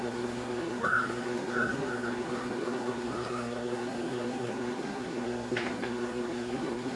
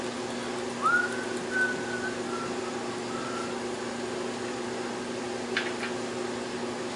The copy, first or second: first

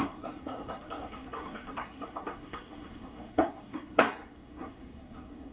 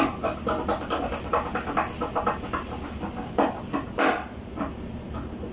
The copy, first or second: first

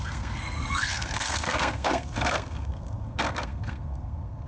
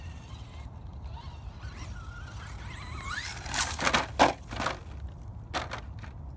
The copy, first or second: first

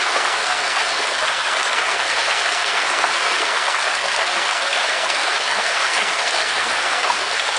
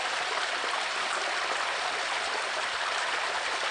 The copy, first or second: first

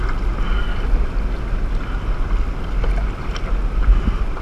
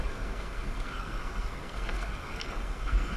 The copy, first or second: second